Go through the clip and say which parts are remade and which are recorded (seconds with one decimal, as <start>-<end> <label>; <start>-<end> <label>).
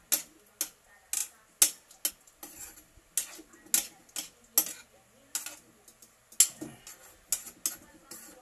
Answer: 0.0-8.4 recorded